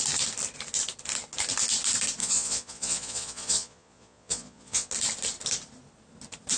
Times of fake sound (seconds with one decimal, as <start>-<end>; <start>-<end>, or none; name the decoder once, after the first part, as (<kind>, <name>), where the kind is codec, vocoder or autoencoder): 2.2-4.9 (vocoder, Vocos)